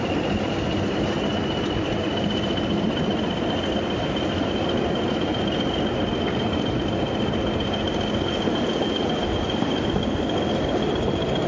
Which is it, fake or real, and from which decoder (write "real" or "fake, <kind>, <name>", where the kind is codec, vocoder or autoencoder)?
real